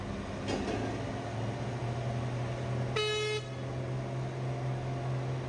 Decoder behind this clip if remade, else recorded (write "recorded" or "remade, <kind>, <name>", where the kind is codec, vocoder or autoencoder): recorded